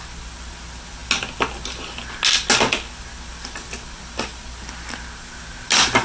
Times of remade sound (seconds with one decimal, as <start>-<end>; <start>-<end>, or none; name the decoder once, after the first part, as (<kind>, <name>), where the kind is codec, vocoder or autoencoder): none